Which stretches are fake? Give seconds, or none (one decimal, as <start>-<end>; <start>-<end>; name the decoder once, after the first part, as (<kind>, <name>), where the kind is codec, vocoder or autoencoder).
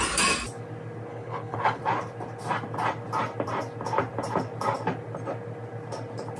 1.1-1.8 (codec, HILCodec)